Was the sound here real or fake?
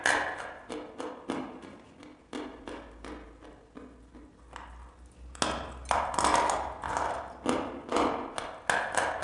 real